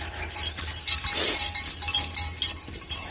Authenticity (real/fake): real